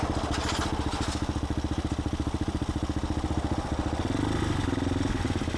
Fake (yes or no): no